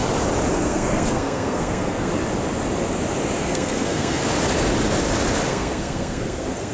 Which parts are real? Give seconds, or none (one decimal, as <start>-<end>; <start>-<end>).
0.0-0.5; 2.1-3.4; 4.2-5.5